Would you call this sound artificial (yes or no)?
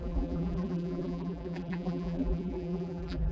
yes